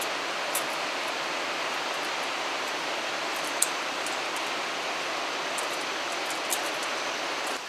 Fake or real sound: real